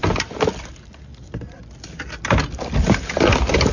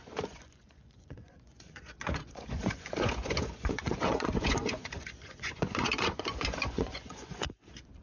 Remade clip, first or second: second